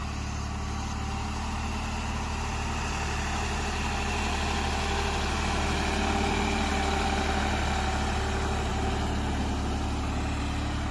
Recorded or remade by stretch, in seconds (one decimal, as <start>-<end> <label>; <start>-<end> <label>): 0.0-10.9 recorded